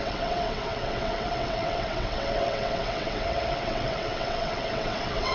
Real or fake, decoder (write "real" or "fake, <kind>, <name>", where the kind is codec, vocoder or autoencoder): fake, vocoder, WaveNeXt